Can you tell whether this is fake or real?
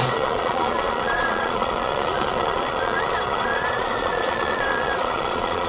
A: fake